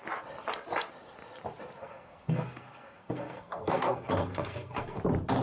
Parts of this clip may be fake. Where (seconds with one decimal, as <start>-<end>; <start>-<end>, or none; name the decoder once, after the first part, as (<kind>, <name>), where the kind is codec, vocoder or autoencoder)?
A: 1.8-5.0 (codec, SNAC)